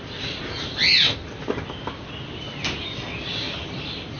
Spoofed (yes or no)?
no